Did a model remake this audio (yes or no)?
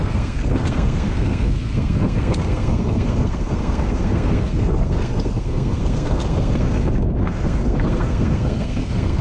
yes